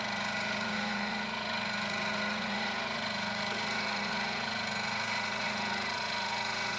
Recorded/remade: remade